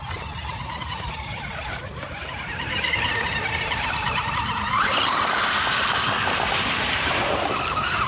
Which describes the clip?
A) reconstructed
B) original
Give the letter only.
A